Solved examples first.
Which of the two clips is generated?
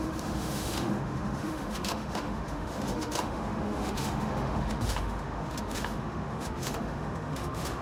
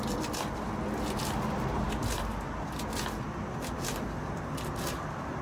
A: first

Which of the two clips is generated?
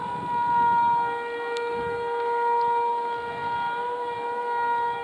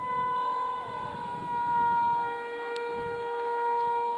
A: second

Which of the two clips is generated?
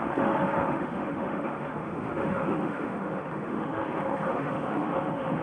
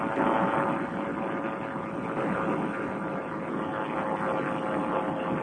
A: first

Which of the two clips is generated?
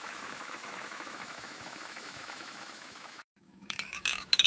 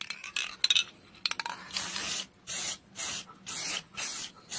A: first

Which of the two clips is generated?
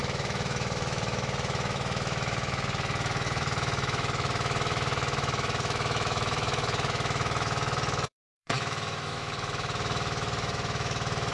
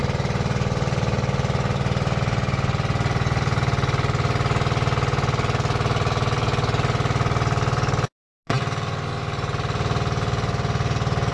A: first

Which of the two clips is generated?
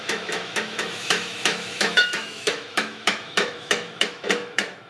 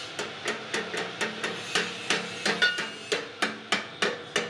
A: first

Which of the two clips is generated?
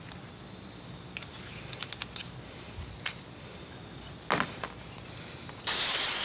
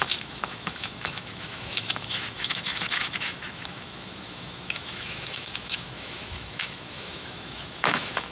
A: second